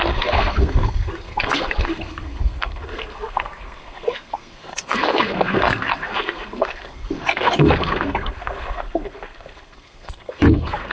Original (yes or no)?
no